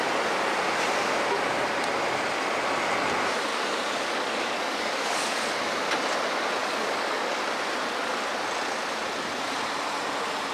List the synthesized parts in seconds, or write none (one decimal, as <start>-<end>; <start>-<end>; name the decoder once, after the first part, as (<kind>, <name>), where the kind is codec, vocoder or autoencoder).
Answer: 3.5-5.3 (codec, DAC); 6.6-7.4